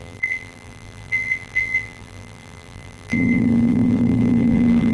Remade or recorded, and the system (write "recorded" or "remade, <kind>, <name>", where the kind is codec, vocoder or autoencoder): remade, vocoder, BigVGAN v2